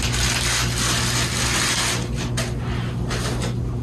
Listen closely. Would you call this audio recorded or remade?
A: recorded